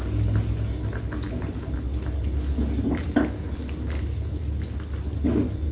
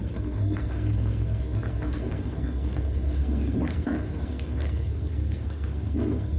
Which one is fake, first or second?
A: second